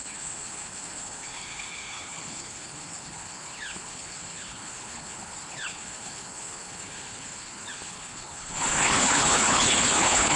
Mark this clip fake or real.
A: fake